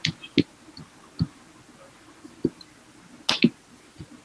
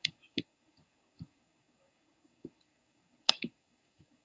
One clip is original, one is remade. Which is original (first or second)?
first